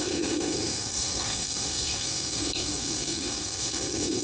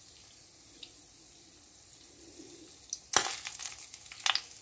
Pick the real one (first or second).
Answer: second